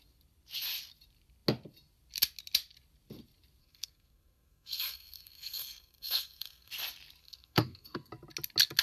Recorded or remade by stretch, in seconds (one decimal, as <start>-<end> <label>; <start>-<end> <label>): 0.0-3.6 recorded; 3.6-6.7 remade; 6.7-7.2 recorded; 7.2-8.1 remade; 8.1-8.8 recorded